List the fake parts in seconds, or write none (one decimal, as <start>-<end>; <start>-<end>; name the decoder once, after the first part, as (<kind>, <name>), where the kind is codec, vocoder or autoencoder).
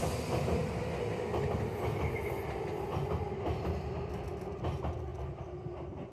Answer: none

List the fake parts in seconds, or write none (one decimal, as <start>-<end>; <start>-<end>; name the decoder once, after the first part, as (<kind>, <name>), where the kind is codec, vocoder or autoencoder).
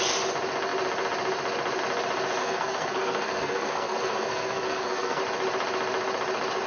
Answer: 2.4-5.2 (codec, SNAC)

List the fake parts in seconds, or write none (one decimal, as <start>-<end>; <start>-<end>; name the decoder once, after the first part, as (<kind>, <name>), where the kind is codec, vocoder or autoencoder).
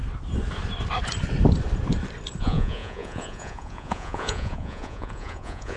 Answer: 2.4-5.8 (vocoder, Vocos)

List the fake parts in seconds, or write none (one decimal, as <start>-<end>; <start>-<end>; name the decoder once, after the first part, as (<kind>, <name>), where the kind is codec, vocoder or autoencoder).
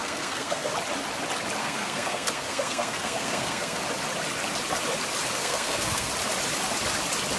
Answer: 0.0-0.7 (codec, SNAC); 1.6-3.8; 5.4-6.1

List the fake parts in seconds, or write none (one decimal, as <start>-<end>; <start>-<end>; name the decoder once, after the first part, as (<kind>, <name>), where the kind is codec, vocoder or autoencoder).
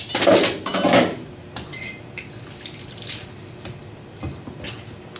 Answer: none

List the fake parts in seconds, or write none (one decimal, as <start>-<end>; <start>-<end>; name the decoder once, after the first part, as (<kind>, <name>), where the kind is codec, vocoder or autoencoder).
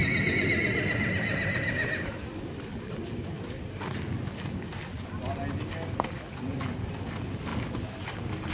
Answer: none